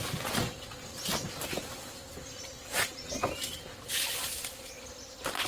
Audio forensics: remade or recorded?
recorded